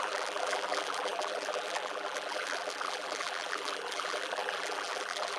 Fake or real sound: fake